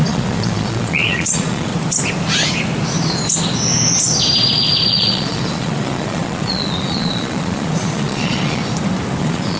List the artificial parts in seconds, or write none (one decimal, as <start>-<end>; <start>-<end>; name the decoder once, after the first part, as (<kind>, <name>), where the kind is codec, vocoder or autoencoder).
0.0-1.7 (vocoder, Vocos); 4.9-8.6; 9.2-9.6